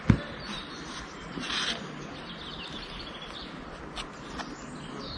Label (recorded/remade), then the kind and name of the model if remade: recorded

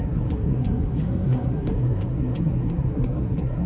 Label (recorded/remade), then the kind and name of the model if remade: remade, codec, SNAC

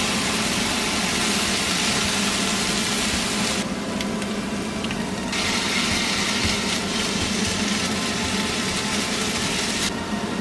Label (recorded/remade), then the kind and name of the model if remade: recorded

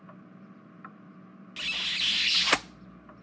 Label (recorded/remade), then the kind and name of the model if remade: recorded